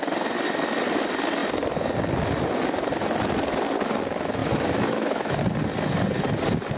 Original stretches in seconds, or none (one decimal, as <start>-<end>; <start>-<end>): 0.0-4.4; 5.4-6.8